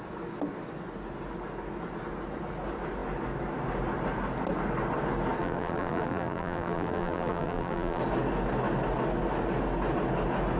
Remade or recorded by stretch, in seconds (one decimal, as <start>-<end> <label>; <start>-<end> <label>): 0.0-5.4 recorded; 5.4-8.0 remade; 8.0-10.6 recorded